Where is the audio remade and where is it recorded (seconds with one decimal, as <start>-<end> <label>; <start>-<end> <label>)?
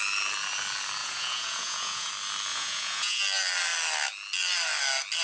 0.0-1.0 recorded; 1.0-2.1 remade; 2.1-2.5 recorded; 2.5-3.2 remade; 3.2-5.2 recorded